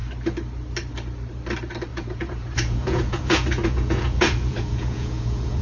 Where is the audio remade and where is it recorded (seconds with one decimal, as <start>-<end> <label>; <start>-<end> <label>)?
0.0-1.9 recorded; 1.9-5.6 remade